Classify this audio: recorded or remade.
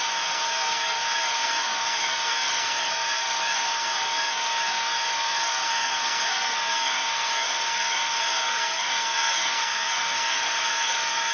remade